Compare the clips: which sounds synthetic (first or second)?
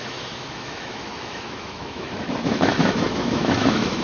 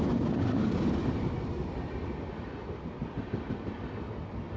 first